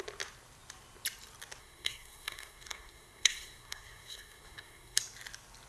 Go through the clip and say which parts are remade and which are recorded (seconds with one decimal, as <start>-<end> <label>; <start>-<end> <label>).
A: 0.0-1.6 recorded; 1.6-5.0 remade; 5.0-5.7 recorded